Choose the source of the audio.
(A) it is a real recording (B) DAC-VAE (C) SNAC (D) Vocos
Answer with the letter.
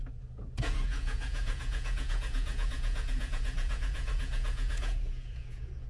D